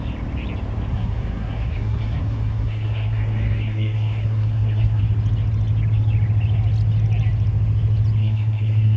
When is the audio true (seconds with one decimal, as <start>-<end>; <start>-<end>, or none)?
0.0-0.9; 5.0-8.2